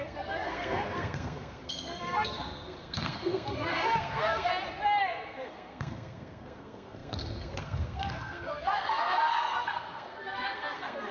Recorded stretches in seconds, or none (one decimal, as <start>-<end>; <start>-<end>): 4.5-5.0